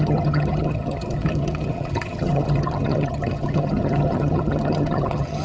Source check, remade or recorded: remade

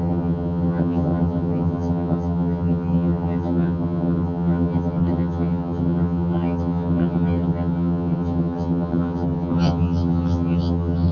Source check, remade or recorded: remade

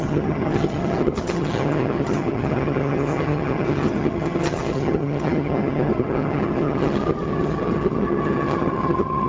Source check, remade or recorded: remade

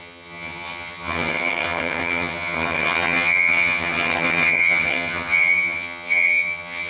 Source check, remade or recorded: remade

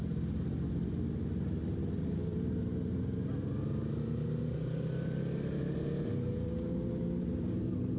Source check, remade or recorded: recorded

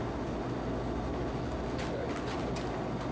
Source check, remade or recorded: recorded